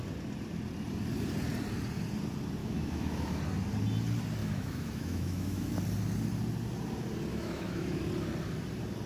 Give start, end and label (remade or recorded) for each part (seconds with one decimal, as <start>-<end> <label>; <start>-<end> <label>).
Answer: 0.0-2.6 recorded; 2.6-3.4 remade; 3.4-4.4 recorded; 4.4-5.8 remade; 5.8-7.3 recorded; 7.3-8.0 remade; 8.0-9.1 recorded